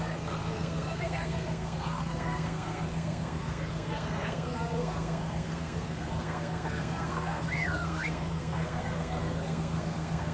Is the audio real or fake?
fake